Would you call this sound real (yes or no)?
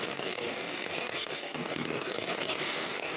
no